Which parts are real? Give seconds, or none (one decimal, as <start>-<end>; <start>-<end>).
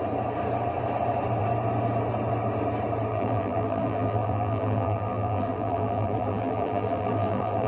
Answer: 0.0-3.1